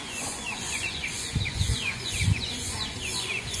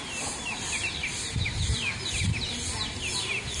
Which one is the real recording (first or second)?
second